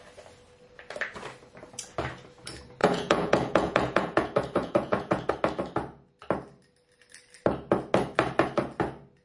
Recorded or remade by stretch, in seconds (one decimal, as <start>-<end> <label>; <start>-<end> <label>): 0.0-2.8 recorded; 2.8-5.3 remade; 5.3-9.2 recorded